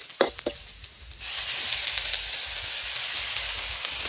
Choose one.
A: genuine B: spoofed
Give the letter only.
A